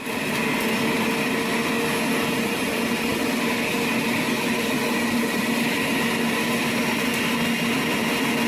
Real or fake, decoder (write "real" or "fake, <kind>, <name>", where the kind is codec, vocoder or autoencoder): real